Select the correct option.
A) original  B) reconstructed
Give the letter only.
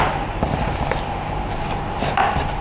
A